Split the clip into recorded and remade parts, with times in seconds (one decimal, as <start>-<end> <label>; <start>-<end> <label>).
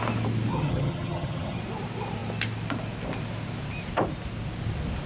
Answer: 0.0-0.5 recorded; 0.5-1.6 remade; 1.6-5.1 recorded